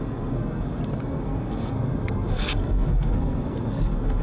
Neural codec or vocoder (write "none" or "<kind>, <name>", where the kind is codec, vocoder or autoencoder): codec, SNAC